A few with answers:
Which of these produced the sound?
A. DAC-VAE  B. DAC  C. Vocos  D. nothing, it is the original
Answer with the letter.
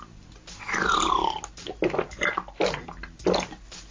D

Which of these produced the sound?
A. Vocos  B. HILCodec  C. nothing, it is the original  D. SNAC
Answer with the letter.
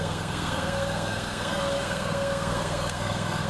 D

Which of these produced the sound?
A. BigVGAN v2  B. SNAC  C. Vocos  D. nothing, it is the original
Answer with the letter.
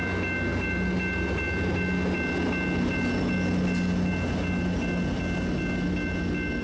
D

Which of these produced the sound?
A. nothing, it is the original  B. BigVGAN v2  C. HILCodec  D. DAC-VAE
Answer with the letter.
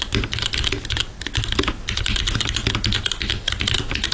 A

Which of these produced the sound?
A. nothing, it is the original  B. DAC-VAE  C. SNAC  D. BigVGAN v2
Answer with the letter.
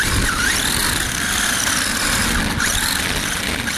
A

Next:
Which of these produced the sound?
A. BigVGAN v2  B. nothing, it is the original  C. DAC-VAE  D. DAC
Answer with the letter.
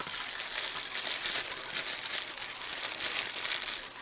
B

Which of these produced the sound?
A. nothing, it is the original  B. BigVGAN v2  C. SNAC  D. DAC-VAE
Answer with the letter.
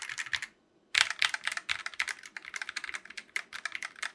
A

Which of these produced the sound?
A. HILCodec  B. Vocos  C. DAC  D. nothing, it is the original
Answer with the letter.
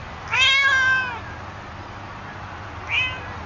D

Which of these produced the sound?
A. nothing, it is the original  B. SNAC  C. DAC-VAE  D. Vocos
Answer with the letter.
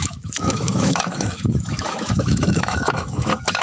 C